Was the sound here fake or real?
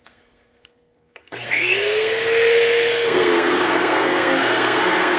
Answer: fake